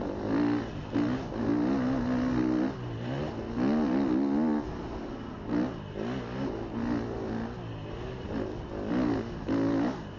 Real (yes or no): yes